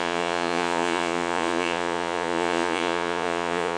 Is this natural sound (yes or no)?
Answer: no